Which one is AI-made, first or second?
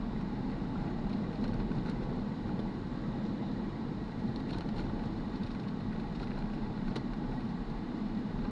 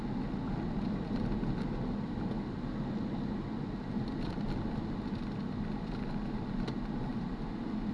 first